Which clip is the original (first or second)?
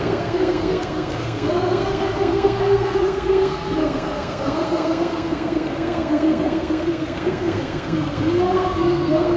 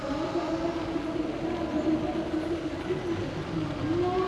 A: second